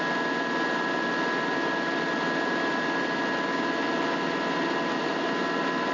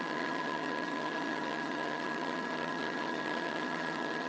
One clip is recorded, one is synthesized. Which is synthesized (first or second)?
second